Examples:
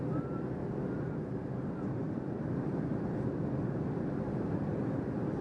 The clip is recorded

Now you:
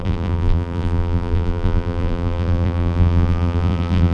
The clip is remade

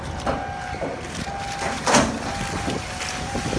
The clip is recorded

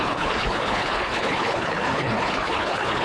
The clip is remade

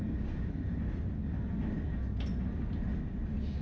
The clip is recorded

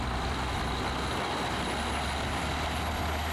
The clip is recorded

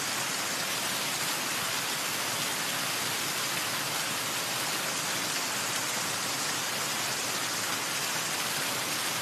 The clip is recorded